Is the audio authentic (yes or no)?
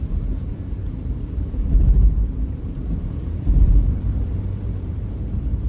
no